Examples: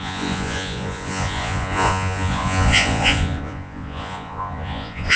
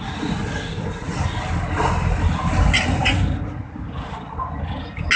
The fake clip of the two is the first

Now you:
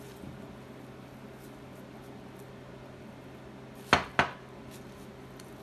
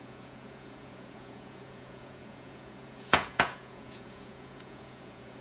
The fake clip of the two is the second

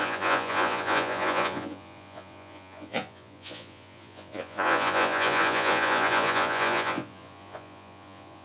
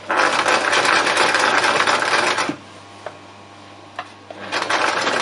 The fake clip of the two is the first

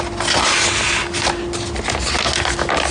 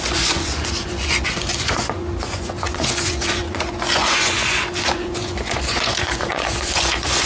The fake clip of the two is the second